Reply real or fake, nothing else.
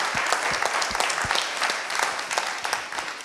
fake